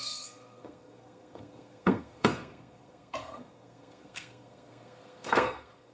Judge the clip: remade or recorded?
remade